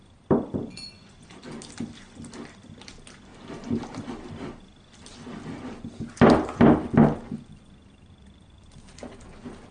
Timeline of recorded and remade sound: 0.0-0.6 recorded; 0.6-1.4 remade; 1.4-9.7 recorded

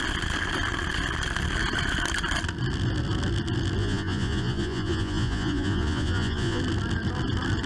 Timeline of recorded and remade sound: 0.0-3.8 recorded; 3.8-6.6 remade; 6.6-7.7 recorded

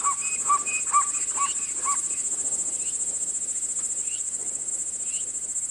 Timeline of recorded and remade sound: 0.0-4.0 recorded; 4.0-4.7 remade; 4.7-5.7 recorded

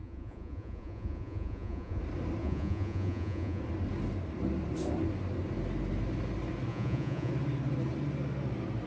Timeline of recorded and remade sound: 0.0-2.0 remade; 2.0-2.4 recorded; 2.4-3.6 remade; 3.6-6.7 recorded; 6.7-7.3 remade; 7.3-8.9 recorded

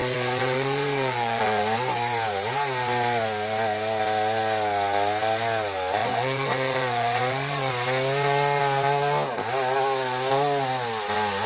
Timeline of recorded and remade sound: 0.0-1.6 remade; 1.6-6.0 recorded; 6.0-7.7 remade; 7.7-11.5 recorded

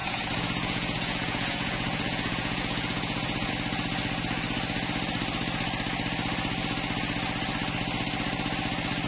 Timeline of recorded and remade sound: 0.0-3.5 remade; 3.5-9.1 recorded

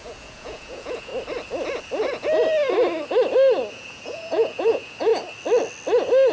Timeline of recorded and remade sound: 0.0-1.1 remade; 1.1-3.7 recorded; 3.7-5.1 remade; 5.1-6.3 recorded

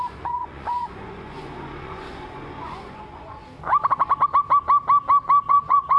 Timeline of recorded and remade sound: 0.0-3.4 remade; 3.4-5.5 recorded; 5.5-6.0 remade